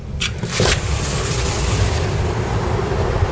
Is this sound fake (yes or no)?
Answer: no